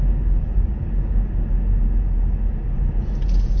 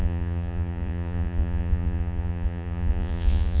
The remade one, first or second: second